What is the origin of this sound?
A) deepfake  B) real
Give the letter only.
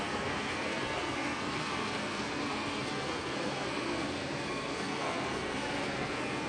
A